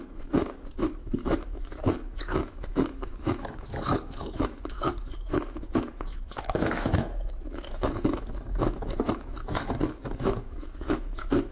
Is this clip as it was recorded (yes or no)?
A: no